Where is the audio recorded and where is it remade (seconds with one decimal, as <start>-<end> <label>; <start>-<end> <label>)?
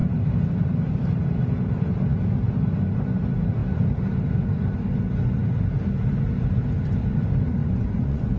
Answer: 0.0-7.6 recorded; 7.6-8.4 remade